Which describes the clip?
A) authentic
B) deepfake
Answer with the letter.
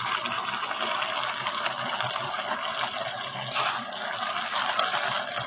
A